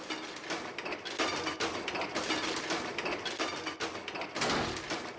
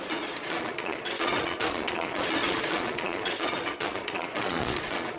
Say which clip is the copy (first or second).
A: second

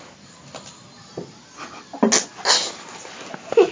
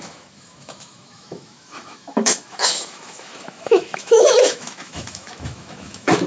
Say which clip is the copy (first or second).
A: second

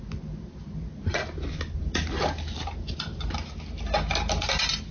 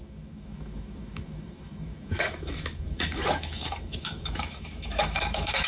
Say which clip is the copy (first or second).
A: second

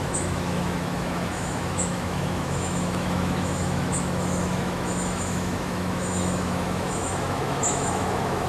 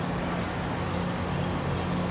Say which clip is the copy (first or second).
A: first